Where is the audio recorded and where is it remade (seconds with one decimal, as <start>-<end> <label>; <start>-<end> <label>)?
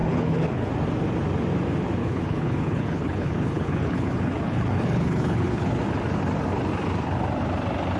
0.0-0.7 remade; 0.7-2.0 recorded; 2.0-5.8 remade; 5.8-8.0 recorded